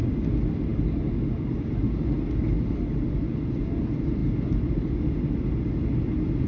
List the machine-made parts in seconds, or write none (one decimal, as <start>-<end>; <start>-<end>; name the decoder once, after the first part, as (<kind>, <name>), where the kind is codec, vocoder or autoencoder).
none